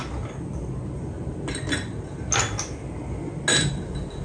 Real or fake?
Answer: real